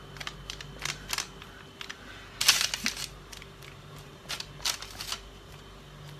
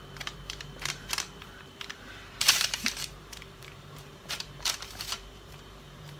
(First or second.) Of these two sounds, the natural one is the first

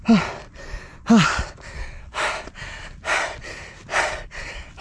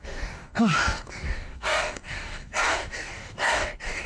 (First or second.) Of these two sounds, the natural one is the first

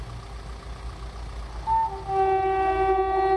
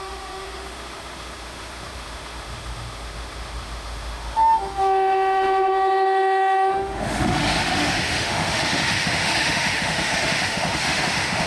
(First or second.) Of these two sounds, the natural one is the first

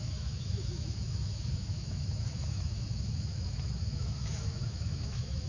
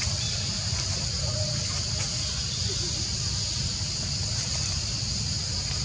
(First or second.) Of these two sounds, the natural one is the second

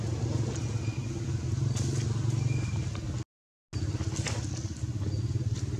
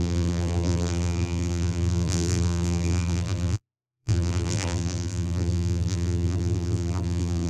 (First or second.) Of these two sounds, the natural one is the first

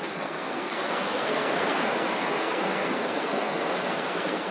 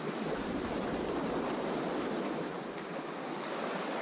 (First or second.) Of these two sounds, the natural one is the second